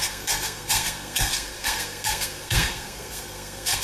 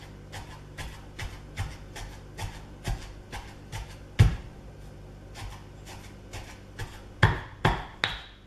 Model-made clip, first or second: first